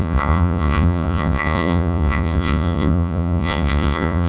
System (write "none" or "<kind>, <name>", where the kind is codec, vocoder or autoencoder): vocoder, Vocos